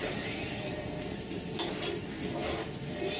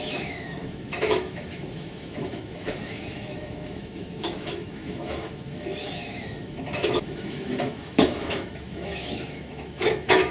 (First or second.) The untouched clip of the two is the first